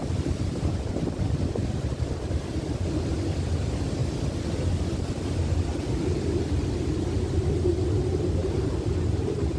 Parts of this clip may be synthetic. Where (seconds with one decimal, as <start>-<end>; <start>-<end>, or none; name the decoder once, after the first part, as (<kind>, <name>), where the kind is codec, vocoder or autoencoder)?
8.4-9.6 (vocoder, BigVGAN v2)